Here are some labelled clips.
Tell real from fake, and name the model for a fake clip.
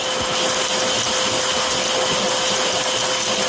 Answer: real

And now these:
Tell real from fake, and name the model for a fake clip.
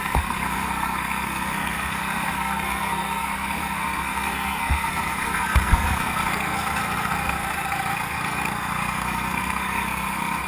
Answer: fake, codec, SNAC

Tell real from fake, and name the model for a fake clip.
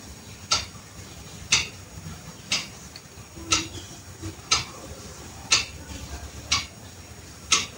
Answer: real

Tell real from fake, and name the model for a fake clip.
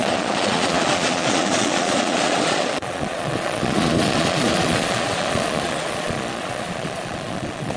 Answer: fake, vocoder, Vocos